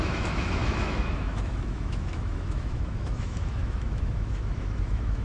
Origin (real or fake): fake